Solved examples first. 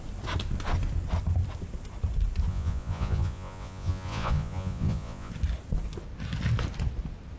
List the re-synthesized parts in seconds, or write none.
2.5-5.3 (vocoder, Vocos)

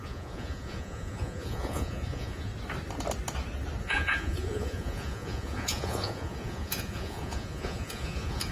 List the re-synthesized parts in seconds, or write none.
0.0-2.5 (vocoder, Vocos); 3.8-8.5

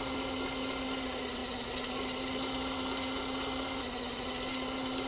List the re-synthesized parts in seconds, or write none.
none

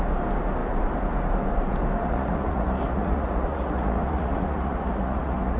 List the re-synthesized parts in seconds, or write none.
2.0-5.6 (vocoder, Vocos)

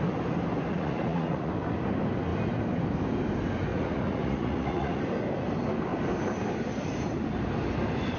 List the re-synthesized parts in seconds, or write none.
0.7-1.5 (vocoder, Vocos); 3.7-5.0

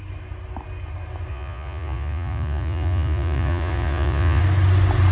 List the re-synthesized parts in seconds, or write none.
1.3-4.4 (vocoder, Vocos)